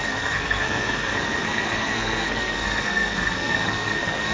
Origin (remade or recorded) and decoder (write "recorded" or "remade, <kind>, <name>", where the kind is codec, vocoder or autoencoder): remade, codec, SNAC